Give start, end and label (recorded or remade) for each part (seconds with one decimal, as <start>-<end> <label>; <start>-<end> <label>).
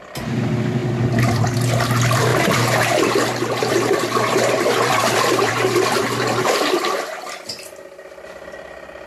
0.0-9.1 remade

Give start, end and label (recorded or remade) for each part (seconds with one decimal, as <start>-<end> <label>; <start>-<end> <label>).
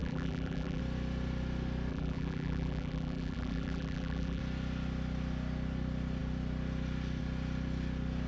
0.0-0.8 remade; 0.8-1.9 recorded; 1.9-4.4 remade; 4.4-8.3 recorded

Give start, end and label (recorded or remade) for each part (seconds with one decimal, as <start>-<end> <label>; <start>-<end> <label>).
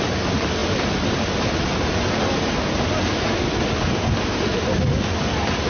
0.0-0.6 recorded; 0.6-1.3 remade; 1.3-5.7 recorded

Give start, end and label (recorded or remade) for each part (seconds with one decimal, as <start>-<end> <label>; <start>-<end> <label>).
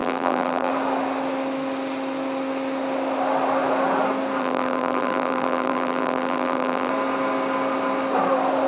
0.0-0.7 remade; 0.7-4.4 recorded; 4.4-6.9 remade; 6.9-8.7 recorded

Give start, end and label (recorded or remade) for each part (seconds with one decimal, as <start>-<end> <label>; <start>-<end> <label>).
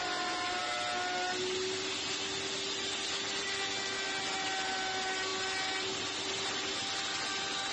0.0-7.7 recorded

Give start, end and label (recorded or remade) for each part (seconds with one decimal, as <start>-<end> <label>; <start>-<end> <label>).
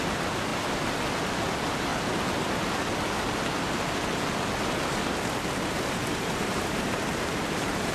0.0-0.5 remade; 0.5-1.5 recorded; 1.5-1.9 remade; 1.9-5.5 recorded; 5.5-7.9 remade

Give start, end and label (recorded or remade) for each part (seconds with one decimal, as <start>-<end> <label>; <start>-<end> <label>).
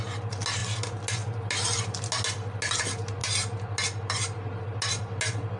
0.0-5.6 recorded